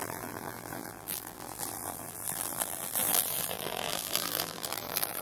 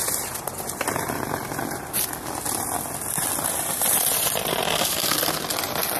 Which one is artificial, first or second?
first